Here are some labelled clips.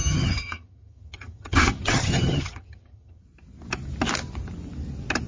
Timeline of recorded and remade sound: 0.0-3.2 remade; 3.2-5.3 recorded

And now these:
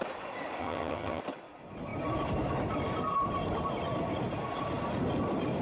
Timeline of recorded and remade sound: 0.0-0.6 recorded; 0.6-1.2 remade; 1.2-5.6 recorded

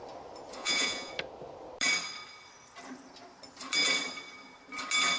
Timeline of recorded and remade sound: 0.0-0.6 recorded; 0.6-1.1 remade; 1.1-5.2 recorded

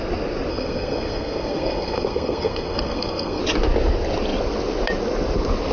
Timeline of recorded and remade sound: 0.0-0.5 recorded; 0.5-3.4 remade; 3.4-5.7 recorded

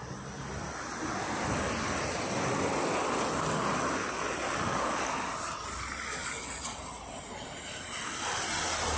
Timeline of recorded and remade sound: 0.0-9.0 recorded

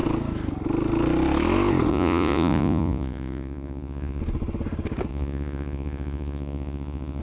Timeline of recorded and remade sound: 0.0-1.9 recorded; 1.9-4.2 remade; 4.2-5.1 recorded; 5.1-7.2 remade

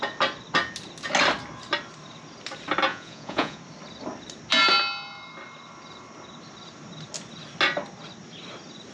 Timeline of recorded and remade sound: 0.0-2.9 recorded; 2.9-3.6 remade; 3.6-8.9 recorded

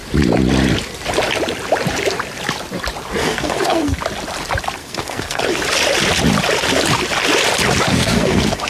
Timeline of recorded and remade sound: 0.0-3.2 recorded; 3.2-4.0 remade; 4.0-4.8 recorded; 4.8-5.4 remade; 5.4-7.9 recorded; 7.9-8.7 remade